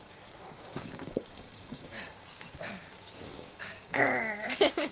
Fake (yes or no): yes